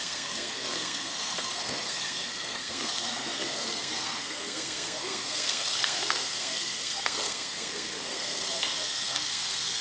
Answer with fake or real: fake